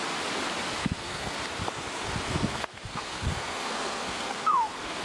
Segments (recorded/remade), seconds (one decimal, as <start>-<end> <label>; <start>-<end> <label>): 0.0-0.8 recorded; 0.8-1.4 remade; 1.4-2.3 recorded; 2.3-5.0 remade